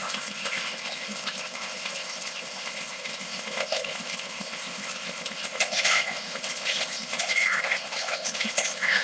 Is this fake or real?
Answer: fake